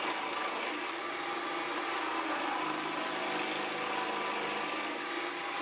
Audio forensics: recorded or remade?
recorded